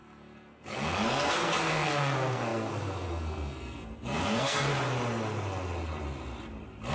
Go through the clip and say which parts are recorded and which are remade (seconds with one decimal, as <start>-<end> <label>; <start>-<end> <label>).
0.0-4.7 remade; 4.7-6.9 recorded